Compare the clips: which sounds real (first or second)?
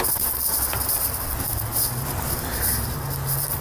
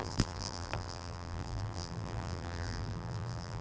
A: first